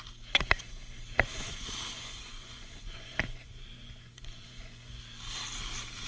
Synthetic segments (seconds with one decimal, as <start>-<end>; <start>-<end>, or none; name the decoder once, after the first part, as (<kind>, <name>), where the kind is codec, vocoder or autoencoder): 1.3-5.0 (vocoder, Vocos)